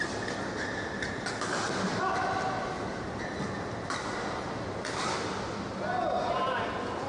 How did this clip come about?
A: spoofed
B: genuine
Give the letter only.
B